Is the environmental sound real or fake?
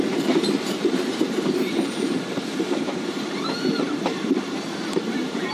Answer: fake